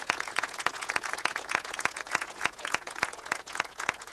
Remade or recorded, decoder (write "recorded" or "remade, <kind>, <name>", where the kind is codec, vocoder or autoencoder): remade, vocoder, Vocos